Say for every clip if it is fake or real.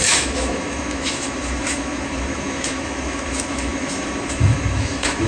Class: fake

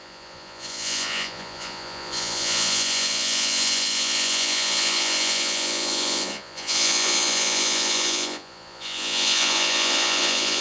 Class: fake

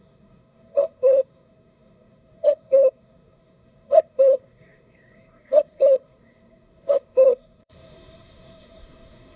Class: fake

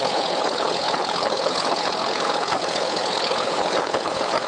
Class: fake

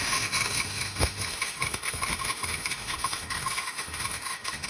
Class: fake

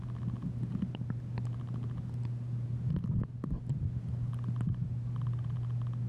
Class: real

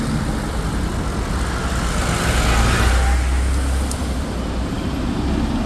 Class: real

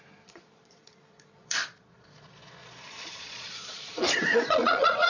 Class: fake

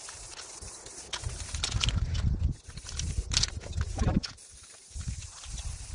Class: real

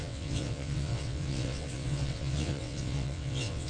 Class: fake